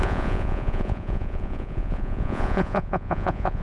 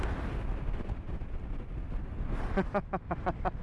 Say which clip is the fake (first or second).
first